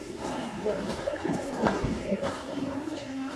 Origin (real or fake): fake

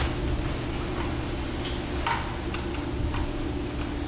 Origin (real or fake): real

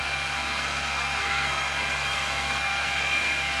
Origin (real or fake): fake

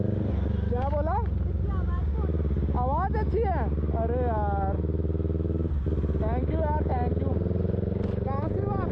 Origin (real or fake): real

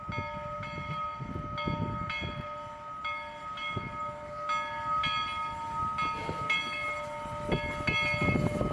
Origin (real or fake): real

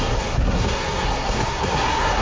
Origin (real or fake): fake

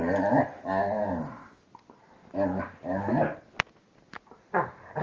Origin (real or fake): real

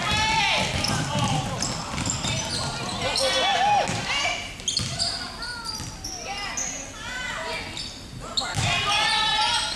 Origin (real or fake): real